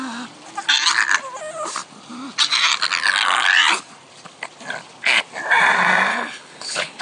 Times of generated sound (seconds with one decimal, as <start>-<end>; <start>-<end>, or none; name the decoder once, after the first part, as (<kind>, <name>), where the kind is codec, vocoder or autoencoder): 6.1-7.0 (codec, HILCodec)